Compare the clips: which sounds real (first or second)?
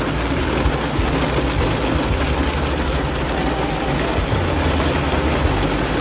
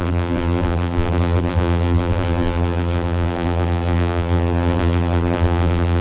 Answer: first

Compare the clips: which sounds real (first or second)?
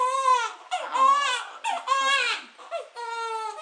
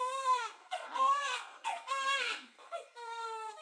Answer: first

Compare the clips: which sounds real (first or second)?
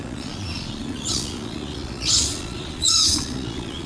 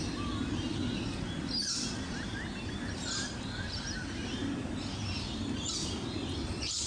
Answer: second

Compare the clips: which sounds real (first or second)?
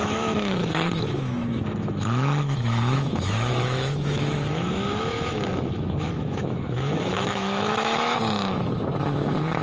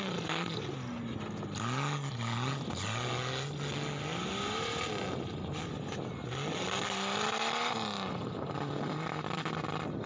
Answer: second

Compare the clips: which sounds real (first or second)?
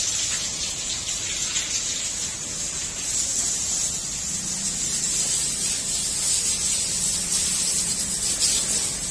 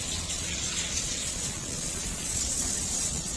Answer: first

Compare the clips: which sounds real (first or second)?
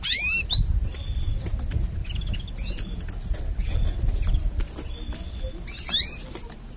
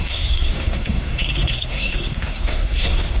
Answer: first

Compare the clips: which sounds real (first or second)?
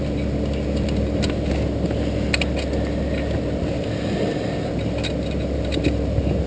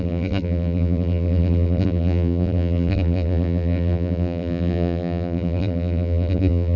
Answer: first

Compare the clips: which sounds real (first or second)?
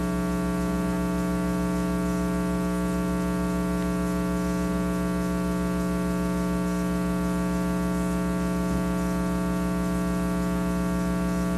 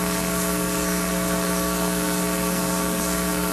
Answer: first